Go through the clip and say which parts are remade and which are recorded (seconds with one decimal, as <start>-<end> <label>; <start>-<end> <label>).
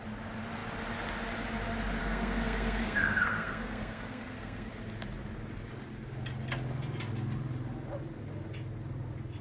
0.0-2.0 recorded; 2.0-4.7 remade; 4.7-9.4 recorded